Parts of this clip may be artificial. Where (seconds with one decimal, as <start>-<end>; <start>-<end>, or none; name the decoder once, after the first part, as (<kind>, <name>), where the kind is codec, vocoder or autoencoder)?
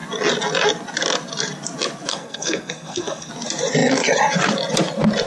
2.1-3.3 (codec, SNAC)